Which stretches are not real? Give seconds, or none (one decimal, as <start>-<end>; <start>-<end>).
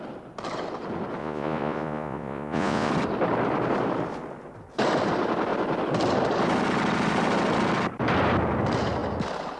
1.2-2.9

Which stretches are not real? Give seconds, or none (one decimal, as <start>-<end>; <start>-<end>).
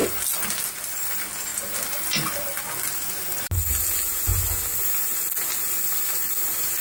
none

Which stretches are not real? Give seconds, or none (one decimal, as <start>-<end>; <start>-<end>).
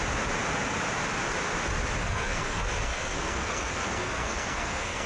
2.0-5.1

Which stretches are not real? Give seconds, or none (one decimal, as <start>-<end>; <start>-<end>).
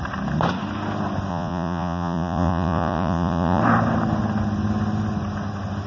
1.3-3.6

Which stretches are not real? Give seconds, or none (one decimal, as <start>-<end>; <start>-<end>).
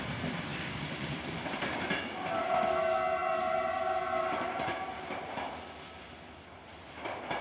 0.5-1.5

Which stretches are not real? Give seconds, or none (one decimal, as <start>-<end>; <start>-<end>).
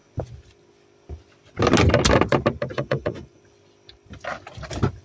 2.7-3.4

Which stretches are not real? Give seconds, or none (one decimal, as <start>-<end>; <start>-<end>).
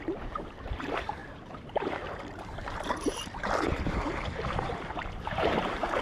0.0-6.0